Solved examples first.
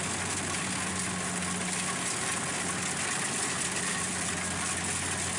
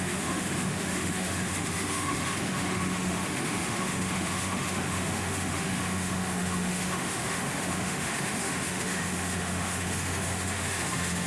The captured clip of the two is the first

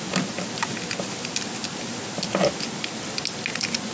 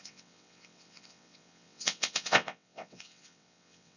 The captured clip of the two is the first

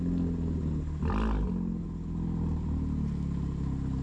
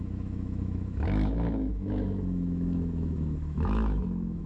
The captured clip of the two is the first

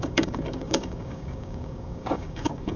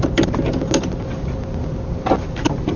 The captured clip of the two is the second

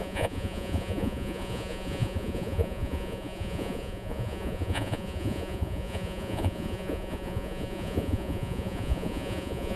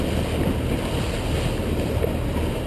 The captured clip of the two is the second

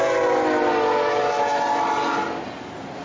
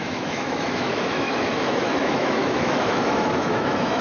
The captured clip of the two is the first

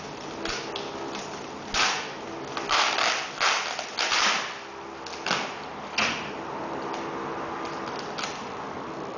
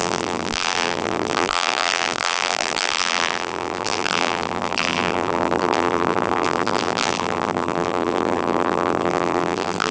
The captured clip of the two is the first